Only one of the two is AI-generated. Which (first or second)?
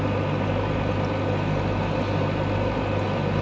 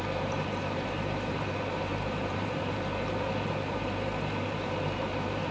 second